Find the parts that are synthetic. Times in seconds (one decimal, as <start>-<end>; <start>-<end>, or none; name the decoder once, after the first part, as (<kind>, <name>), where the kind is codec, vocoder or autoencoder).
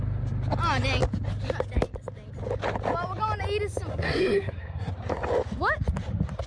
3.9-4.9 (codec, SNAC)